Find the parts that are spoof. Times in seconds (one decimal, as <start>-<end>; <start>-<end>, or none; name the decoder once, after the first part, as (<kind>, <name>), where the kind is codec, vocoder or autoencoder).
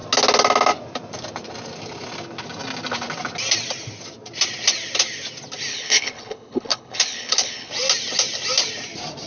5.7-7.7 (codec, HILCodec)